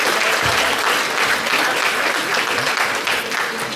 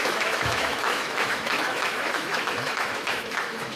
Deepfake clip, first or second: second